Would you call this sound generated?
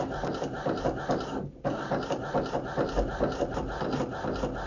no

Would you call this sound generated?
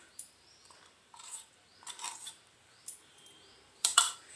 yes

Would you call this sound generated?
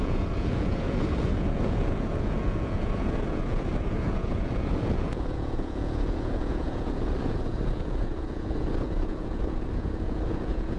yes